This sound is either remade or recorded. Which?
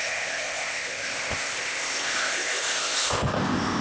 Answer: remade